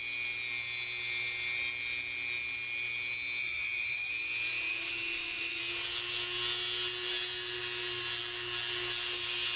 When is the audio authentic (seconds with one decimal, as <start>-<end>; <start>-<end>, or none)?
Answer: 0.0-3.4; 4.1-4.7; 5.6-9.6